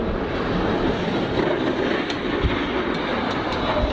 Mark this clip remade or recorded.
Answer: recorded